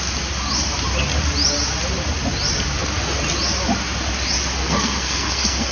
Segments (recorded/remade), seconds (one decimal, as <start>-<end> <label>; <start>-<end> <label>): 0.0-4.6 recorded; 4.6-5.7 remade